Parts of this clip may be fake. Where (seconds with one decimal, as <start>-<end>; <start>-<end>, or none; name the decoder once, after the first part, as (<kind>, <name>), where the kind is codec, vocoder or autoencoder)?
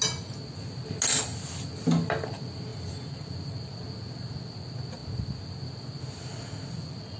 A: none